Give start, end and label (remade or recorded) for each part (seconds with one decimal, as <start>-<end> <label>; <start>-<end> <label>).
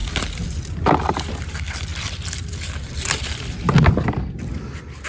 0.0-1.9 recorded; 1.9-4.2 remade; 4.2-5.1 recorded